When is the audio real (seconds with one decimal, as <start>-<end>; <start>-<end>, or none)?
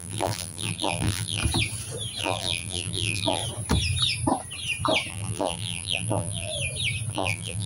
1.4-2.2; 3.4-5.1; 6.5-7.1